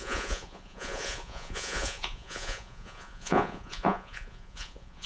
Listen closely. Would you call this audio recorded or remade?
remade